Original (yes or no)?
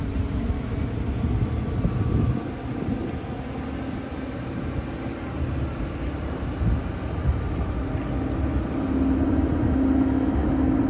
yes